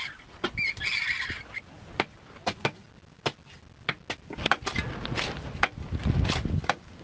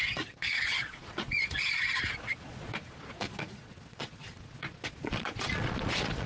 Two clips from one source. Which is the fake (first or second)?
second